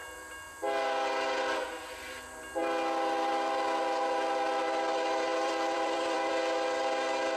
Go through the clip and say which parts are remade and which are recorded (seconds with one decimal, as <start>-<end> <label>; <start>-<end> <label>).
0.0-5.3 recorded; 5.3-6.3 remade; 6.3-7.4 recorded